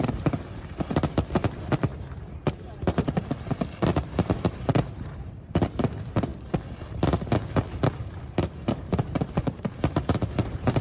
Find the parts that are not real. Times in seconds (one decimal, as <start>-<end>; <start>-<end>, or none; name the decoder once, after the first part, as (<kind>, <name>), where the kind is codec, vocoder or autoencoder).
0.0-6.3 (vocoder, BigVGAN v2); 8.0-10.8